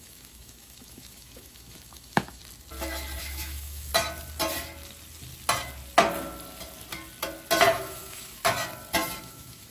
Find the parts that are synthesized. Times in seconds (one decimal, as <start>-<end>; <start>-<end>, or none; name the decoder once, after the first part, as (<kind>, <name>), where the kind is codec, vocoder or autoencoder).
0.0-2.4 (autoencoder, DAC-VAE); 3.2-3.9; 7.7-8.4; 9.2-9.7